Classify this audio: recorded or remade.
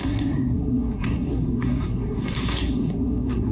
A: remade